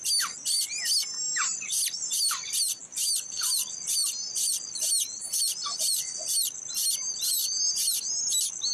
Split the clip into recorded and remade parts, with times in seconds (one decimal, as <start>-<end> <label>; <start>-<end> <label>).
0.0-8.7 recorded